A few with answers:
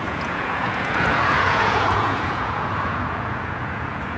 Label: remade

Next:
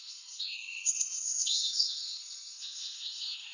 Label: remade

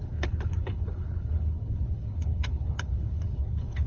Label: remade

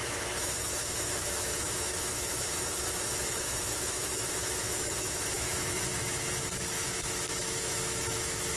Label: remade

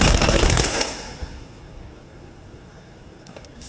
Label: remade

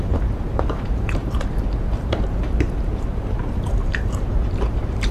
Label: remade